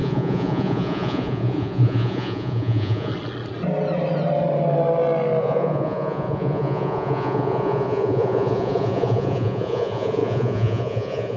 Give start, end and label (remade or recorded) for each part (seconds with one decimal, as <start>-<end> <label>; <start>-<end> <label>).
0.0-3.1 remade; 3.1-5.4 recorded; 5.4-11.4 remade